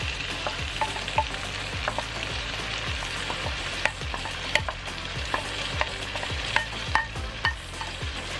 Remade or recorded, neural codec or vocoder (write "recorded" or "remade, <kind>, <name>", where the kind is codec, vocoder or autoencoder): remade, vocoder, BigVGAN v2